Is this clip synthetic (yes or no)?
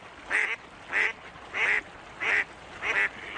no